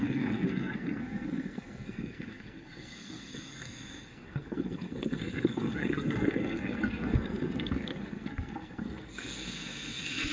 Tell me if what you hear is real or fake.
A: fake